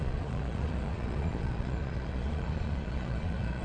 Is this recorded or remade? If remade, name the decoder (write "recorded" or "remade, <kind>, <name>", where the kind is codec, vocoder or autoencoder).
remade, vocoder, Vocos